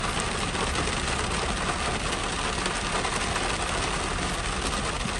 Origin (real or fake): real